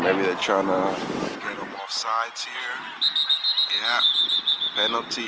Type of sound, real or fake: real